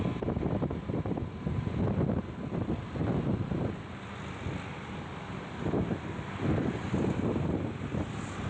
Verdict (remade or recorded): recorded